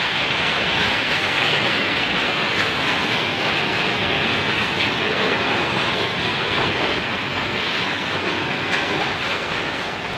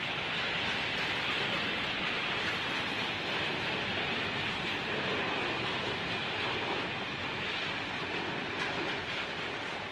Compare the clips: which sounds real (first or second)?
second